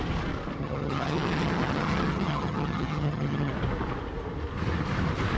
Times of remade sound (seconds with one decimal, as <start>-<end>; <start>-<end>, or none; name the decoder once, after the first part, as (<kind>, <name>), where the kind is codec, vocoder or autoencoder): 0.6-3.5 (vocoder, HiFi-GAN)